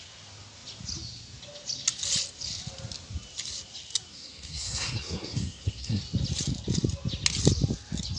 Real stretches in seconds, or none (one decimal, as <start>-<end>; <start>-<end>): 0.0-4.1; 6.0-8.2